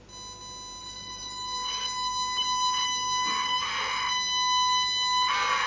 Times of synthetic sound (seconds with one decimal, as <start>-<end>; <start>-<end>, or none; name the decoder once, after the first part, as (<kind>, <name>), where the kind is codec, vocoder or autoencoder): 0.8-3.7 (codec, DAC)